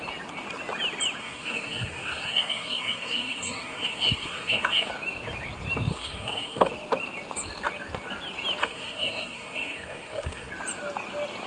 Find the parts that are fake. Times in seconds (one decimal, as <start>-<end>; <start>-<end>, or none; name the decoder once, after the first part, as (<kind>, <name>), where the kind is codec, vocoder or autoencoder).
1.2-4.9 (codec, SNAC); 5.9-6.7; 8.6-10.5